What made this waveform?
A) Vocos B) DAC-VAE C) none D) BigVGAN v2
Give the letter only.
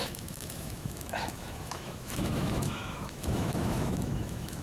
B